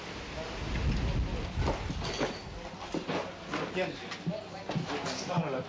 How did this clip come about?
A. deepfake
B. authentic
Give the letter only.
B